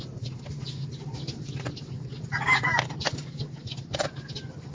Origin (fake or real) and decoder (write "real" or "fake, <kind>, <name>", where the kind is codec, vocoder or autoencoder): real